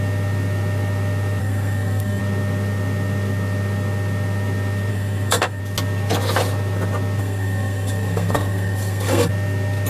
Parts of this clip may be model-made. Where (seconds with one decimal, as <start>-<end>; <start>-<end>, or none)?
1.4-2.2; 4.9-5.6; 7.2-9.3